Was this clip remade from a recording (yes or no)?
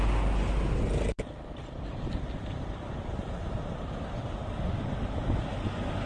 no